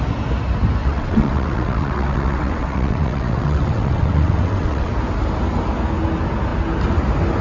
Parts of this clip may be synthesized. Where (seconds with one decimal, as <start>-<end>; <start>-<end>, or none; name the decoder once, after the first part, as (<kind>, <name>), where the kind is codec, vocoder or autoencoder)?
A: 0.8-4.9 (vocoder, WaveNeXt)